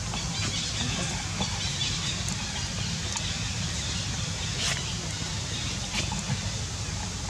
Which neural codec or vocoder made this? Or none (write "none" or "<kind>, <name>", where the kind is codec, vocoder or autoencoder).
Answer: none